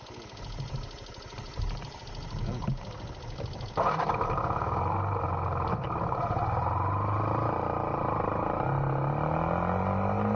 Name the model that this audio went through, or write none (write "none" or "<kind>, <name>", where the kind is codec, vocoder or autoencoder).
none